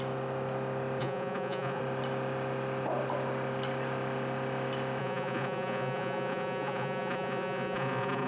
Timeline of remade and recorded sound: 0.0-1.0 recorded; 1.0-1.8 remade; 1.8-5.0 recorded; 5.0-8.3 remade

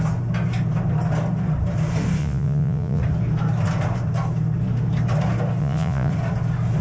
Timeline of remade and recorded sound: 0.0-2.2 recorded; 2.2-3.0 remade; 3.0-5.6 recorded; 5.6-6.1 remade; 6.1-6.8 recorded

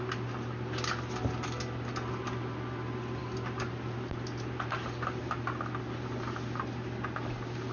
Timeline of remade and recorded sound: 0.0-7.7 recorded

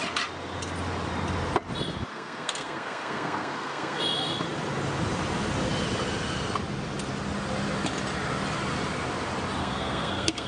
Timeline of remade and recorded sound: 0.0-2.1 recorded; 2.1-4.0 remade; 4.0-9.6 recorded; 9.6-10.5 remade

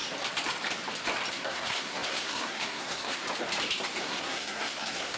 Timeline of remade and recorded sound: 0.0-1.3 recorded; 1.3-3.2 remade; 3.2-4.0 recorded; 4.0-5.2 remade

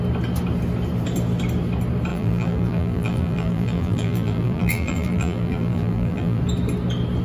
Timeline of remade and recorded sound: 0.0-2.1 recorded; 2.1-6.4 remade; 6.4-7.2 recorded